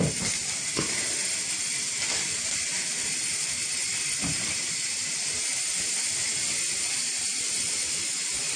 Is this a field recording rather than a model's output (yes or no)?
yes